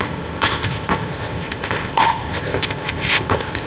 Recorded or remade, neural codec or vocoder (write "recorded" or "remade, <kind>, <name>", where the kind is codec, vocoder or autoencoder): remade, codec, ZipCodec